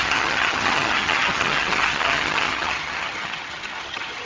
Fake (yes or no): yes